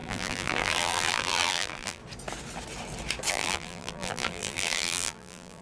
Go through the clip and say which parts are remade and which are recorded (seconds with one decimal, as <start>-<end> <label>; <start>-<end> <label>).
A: 0.0-2.0 remade; 2.0-3.3 recorded; 3.3-5.6 remade

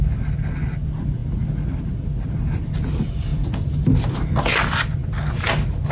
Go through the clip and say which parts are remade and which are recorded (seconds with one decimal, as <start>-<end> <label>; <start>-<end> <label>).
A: 0.0-5.9 recorded

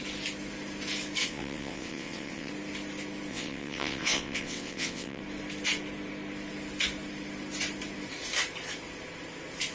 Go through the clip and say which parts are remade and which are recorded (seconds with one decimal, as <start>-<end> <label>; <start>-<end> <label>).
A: 0.0-1.2 recorded; 1.2-2.5 remade; 2.5-3.3 recorded; 3.3-5.2 remade; 5.2-9.7 recorded

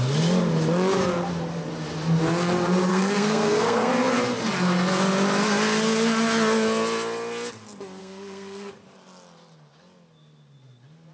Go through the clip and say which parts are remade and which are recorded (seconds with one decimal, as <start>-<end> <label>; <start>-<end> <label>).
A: 0.0-2.9 recorded; 2.9-3.9 remade; 3.9-8.0 recorded; 8.0-8.7 remade; 8.7-11.1 recorded

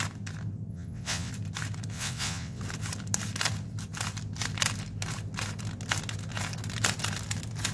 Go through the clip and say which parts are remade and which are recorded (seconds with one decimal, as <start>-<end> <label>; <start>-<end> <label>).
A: 0.0-0.7 recorded; 0.7-1.3 remade; 1.3-1.9 recorded; 1.9-2.6 remade; 2.6-7.7 recorded

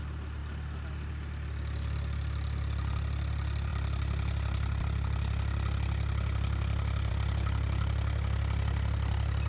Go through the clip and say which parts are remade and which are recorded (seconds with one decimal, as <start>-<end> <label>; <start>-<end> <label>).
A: 0.0-9.5 recorded